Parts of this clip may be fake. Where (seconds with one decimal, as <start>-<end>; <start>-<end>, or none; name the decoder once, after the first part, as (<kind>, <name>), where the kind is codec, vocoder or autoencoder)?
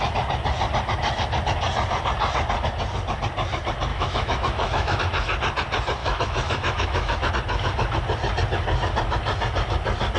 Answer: 3.9-5.0 (autoencoder, DAC-VAE); 6.0-7.3